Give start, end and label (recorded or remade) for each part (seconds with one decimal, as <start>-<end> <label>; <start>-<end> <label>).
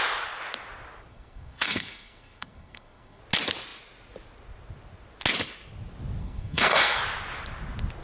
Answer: 0.0-1.1 recorded; 1.1-3.2 remade; 3.2-6.2 recorded; 6.2-7.0 remade; 7.0-8.0 recorded